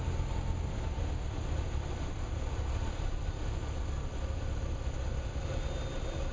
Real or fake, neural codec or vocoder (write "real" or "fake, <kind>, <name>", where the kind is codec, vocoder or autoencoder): real